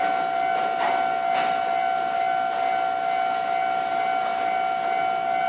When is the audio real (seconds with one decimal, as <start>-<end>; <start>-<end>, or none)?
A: 0.0-5.5